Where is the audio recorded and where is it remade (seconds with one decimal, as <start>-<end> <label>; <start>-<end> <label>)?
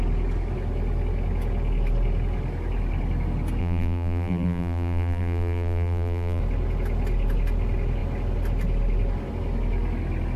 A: 0.0-3.6 recorded; 3.6-6.4 remade; 6.4-10.4 recorded